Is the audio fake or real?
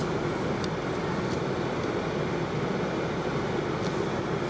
real